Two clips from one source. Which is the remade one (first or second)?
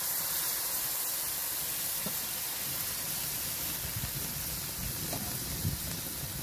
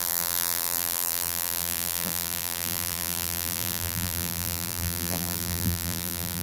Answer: second